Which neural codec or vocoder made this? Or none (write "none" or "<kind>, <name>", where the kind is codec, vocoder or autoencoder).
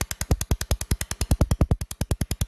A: none